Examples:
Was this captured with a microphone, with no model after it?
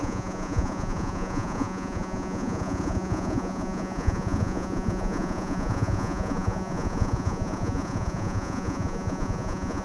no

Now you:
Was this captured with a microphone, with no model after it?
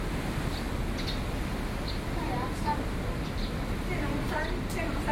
yes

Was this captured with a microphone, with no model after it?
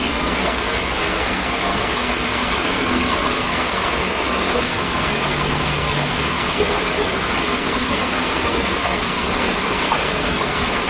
no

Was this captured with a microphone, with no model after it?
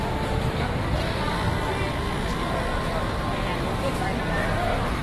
yes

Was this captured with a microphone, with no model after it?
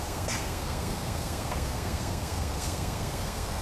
no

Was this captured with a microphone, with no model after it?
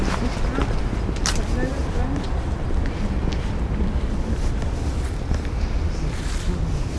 yes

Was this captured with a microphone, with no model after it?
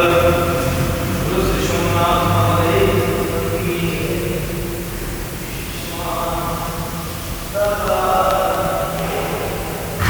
yes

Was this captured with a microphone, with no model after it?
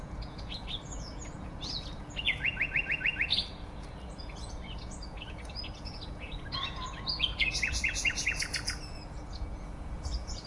no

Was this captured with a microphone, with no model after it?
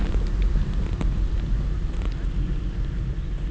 yes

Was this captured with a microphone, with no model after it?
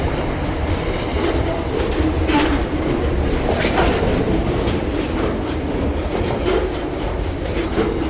yes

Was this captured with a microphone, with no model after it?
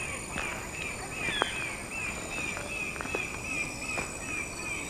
yes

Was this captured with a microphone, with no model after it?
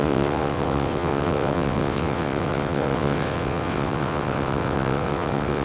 no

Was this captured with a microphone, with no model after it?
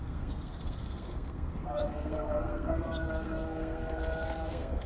no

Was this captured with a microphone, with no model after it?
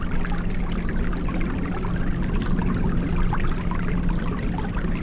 yes